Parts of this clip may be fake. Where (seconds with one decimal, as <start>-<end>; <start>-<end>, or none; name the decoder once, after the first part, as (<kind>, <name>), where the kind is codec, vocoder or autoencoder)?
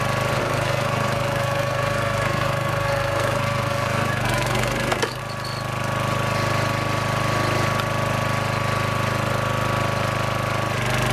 0.4-5.2 (codec, SNAC)